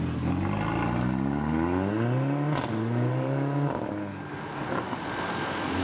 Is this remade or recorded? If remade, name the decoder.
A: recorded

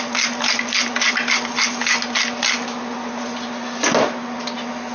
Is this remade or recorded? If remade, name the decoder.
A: recorded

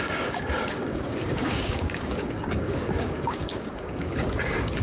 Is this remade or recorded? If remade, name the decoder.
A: remade, codec, DAC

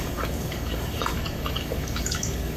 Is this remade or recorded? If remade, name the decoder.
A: remade, codec, DAC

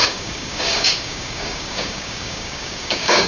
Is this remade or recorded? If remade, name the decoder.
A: remade, codec, DAC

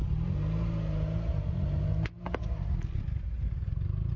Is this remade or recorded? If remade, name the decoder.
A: recorded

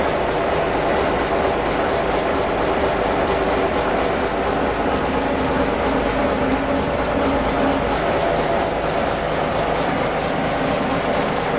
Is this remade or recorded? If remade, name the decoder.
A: recorded